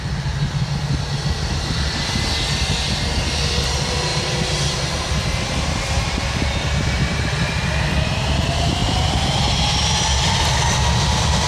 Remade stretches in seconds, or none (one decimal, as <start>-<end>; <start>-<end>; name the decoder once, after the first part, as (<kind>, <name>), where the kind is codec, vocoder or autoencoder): 4.1-7.2 (vocoder, BigVGAN v2); 8.8-9.4